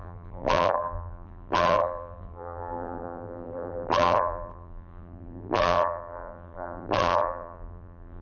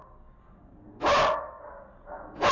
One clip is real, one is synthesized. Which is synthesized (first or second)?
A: first